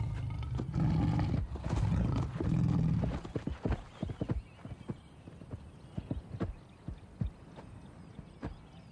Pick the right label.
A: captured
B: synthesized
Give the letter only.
A